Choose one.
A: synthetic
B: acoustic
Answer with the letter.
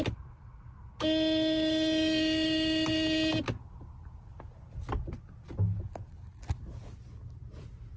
B